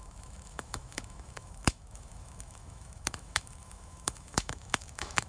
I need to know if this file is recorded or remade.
remade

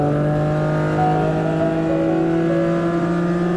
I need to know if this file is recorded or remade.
recorded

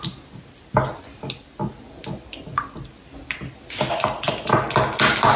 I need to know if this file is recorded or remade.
recorded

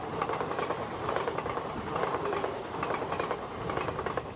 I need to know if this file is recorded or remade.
recorded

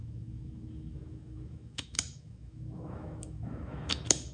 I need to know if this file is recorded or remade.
remade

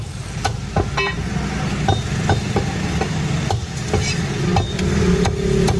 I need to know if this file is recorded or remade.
recorded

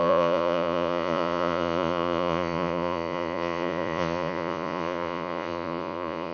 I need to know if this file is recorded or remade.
remade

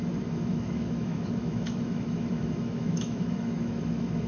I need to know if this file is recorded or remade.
remade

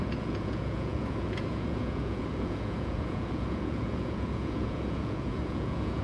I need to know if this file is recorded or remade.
remade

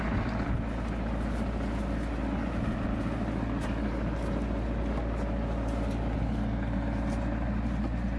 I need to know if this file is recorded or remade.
recorded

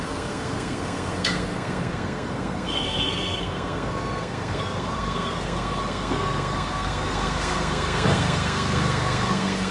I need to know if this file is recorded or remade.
remade